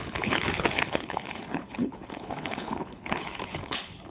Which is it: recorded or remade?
remade